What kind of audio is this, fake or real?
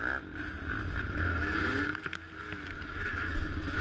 real